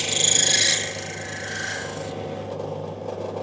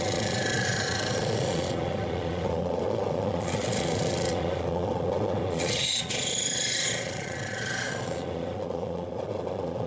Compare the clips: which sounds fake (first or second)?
second